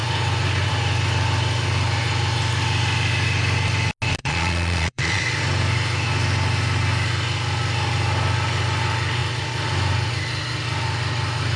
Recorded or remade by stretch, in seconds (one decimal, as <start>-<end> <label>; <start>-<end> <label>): 0.0-4.2 recorded; 4.2-5.2 remade; 5.2-11.6 recorded